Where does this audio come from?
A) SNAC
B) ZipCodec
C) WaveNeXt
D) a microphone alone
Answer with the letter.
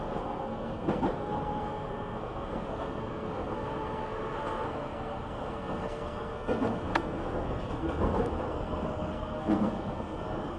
A